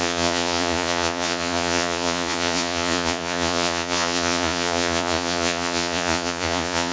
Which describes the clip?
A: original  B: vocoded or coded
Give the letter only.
B